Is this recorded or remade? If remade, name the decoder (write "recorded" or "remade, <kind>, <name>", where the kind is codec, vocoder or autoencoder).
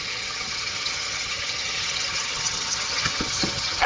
remade, vocoder, HiFi-GAN